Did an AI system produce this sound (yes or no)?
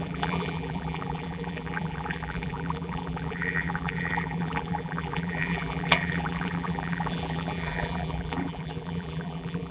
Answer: yes